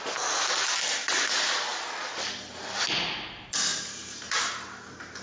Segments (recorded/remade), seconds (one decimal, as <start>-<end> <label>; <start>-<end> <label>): 0.0-3.7 recorded; 3.7-4.4 remade; 4.4-5.2 recorded